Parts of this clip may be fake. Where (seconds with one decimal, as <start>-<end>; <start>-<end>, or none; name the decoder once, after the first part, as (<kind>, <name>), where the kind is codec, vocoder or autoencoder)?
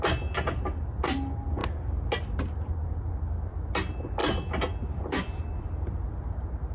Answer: none